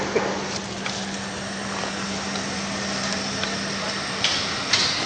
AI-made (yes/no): yes